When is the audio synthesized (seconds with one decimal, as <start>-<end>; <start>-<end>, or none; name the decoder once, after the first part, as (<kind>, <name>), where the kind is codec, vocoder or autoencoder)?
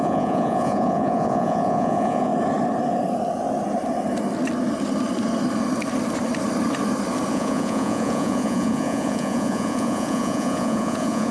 0.0-2.3 (vocoder, Vocos); 7.3-11.3